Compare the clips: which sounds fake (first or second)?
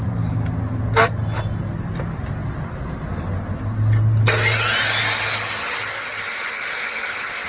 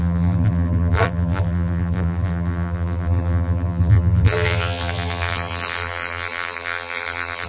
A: second